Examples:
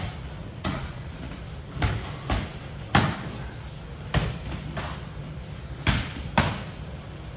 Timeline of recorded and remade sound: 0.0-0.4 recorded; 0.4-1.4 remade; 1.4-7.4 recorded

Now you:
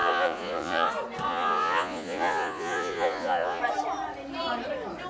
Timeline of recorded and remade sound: 0.0-0.9 remade; 0.9-1.3 recorded; 1.3-3.6 remade; 3.6-5.1 recorded

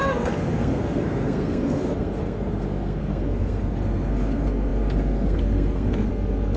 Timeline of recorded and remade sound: 0.0-6.6 remade

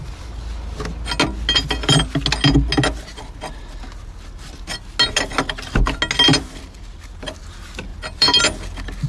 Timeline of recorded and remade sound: 0.0-7.9 recorded; 7.9-8.4 remade; 8.4-9.1 recorded

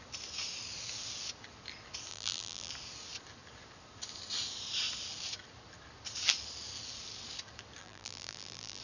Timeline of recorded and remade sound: 0.0-2.1 recorded; 2.1-2.7 remade; 2.7-7.8 recorded; 7.8-8.8 remade

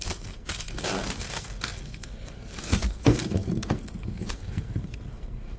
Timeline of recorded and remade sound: 0.0-5.6 remade

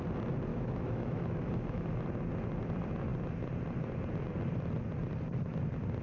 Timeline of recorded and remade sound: 0.0-0.5 recorded; 0.5-1.9 remade; 1.9-6.0 recorded

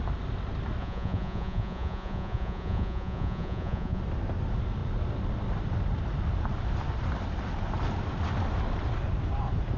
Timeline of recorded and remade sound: 0.0-0.8 recorded; 0.8-4.0 remade; 4.0-9.8 recorded